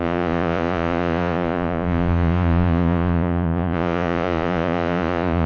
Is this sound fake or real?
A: fake